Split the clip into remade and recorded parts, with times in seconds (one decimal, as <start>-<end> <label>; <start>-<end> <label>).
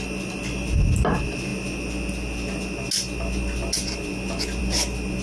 0.0-5.2 recorded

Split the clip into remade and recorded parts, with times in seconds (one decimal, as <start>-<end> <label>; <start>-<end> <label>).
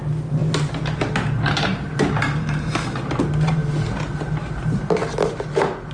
0.0-5.9 recorded